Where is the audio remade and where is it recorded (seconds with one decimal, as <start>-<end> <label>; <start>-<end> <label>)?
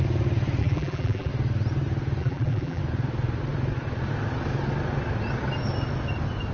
0.0-0.6 recorded; 0.6-1.3 remade; 1.3-2.2 recorded; 2.2-2.8 remade; 2.8-6.5 recorded